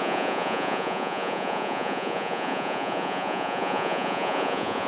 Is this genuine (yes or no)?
no